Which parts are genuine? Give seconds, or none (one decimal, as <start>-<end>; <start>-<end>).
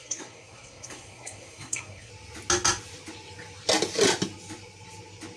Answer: 2.1-5.4